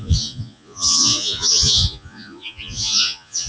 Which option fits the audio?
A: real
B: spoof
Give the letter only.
B